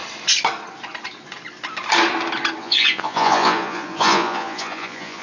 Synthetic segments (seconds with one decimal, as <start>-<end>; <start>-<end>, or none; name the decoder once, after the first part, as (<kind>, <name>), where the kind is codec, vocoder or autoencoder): 2.6-5.2 (vocoder, Vocos)